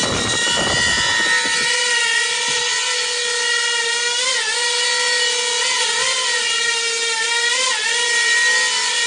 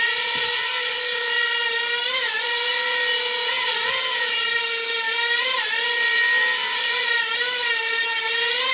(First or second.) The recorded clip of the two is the first